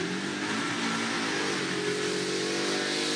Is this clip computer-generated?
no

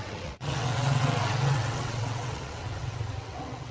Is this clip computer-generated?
yes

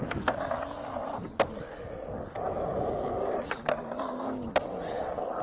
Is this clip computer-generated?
no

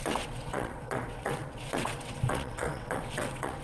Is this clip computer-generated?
yes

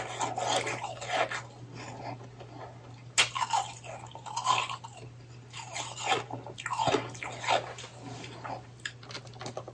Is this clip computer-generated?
no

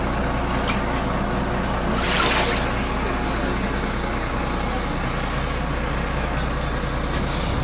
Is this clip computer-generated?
no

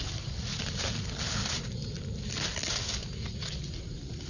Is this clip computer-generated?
no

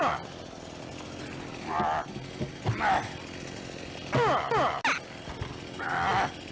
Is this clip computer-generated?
no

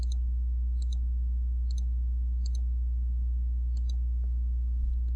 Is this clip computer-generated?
no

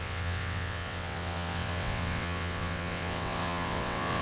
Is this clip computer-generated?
yes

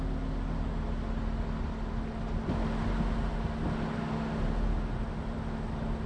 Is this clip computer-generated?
no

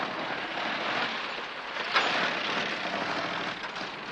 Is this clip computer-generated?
no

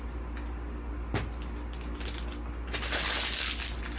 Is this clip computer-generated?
no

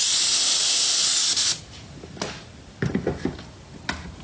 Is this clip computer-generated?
no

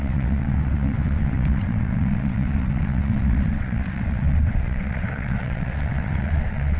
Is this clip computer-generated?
yes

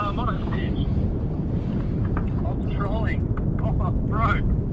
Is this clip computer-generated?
no